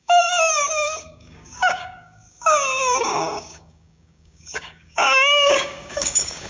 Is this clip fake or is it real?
fake